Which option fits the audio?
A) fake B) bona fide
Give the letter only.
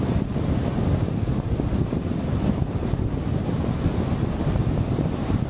B